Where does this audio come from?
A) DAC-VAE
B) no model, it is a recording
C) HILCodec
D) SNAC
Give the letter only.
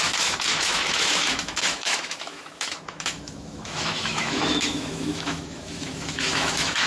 A